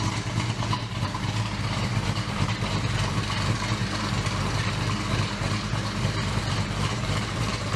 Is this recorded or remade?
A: remade